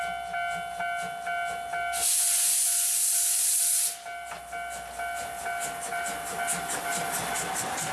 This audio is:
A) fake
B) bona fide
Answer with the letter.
B